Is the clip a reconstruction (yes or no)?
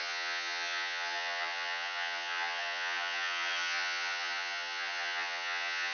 yes